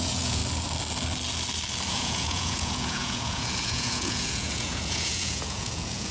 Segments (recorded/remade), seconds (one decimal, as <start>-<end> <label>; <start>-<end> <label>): 0.0-0.4 remade; 0.4-1.9 recorded; 1.9-6.1 remade